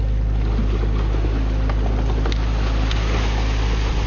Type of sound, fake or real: real